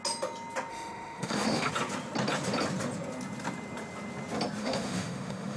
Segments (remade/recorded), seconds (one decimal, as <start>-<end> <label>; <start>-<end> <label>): 0.0-0.7 recorded; 0.7-1.7 remade; 1.7-4.6 recorded; 4.6-5.6 remade